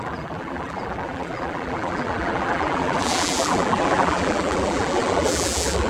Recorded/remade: remade